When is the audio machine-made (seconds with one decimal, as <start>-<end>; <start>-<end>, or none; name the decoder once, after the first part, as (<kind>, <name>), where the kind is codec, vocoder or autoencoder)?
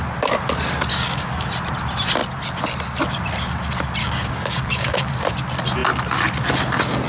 0.9-1.5 (codec, DAC); 4.0-5.1